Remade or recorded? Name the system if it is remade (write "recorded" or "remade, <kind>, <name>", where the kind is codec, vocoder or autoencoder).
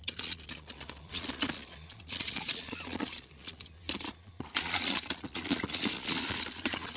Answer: remade, vocoder, Vocos